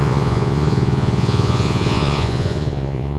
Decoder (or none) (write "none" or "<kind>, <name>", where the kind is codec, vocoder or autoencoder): vocoder, Vocos